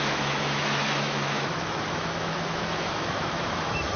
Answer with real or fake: fake